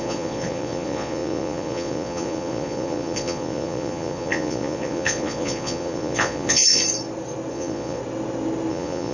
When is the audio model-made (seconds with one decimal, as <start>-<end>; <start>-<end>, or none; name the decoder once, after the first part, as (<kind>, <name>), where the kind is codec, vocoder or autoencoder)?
0.0-6.8 (vocoder, Vocos); 7.5-8.0; 8.7-9.1